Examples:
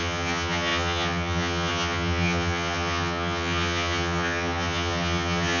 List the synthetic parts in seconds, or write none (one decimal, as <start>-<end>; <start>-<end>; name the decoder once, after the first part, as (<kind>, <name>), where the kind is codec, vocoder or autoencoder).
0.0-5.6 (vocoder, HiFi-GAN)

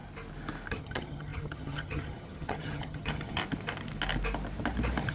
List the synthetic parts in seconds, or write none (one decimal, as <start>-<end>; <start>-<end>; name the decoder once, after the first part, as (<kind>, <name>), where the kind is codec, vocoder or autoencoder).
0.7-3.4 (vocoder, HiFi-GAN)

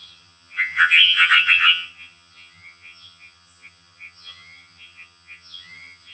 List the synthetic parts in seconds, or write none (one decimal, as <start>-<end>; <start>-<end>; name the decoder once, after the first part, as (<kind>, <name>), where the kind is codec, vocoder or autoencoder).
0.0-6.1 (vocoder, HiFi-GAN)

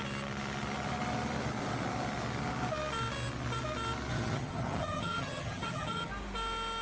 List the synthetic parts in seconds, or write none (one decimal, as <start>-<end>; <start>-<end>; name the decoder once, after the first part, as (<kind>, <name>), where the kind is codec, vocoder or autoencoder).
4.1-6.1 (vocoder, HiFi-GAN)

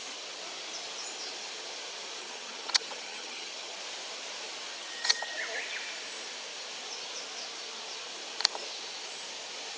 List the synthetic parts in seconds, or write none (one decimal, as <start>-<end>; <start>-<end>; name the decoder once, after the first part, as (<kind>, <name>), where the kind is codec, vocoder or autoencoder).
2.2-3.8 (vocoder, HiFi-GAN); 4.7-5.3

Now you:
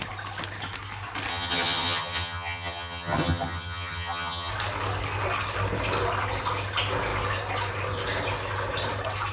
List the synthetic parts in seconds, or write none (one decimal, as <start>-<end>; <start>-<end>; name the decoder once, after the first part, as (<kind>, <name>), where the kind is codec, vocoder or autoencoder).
1.3-4.5 (vocoder, HiFi-GAN)